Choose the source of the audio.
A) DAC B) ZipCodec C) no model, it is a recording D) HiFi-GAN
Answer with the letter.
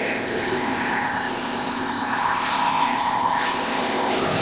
B